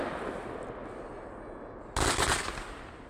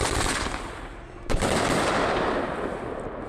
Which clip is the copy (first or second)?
second